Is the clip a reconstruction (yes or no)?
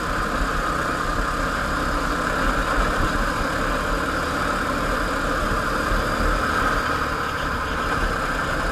no